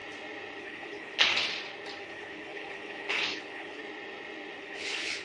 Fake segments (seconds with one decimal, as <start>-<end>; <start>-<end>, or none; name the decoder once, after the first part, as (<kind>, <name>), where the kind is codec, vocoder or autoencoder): 0.6-1.3 (codec, HILCodec); 2.0-3.8; 4.6-5.2